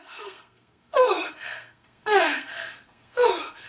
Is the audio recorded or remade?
remade